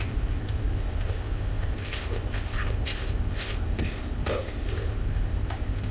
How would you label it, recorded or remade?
remade